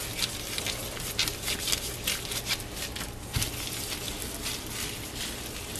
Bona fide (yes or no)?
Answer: yes